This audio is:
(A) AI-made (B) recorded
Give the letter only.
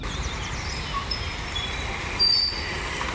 B